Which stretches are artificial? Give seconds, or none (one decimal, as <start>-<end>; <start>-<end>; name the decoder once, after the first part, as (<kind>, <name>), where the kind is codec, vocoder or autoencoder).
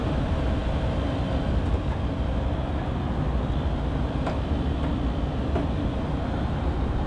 none